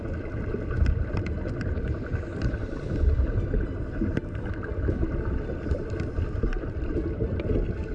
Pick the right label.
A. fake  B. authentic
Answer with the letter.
B